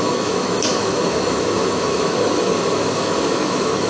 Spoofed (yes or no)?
yes